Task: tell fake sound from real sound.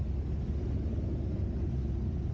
real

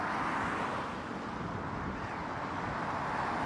real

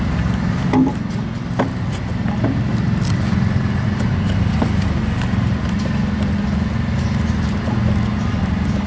real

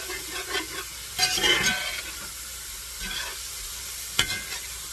real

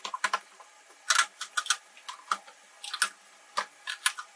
real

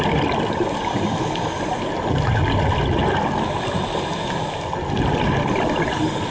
real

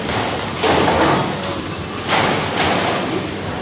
real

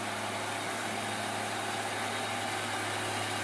real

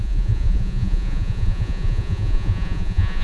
fake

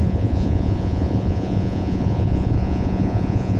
fake